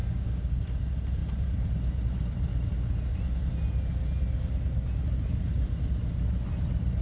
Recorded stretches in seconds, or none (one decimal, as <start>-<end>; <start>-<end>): 0.6-7.0